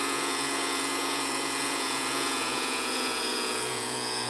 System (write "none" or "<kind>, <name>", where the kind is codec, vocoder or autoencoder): vocoder, Vocos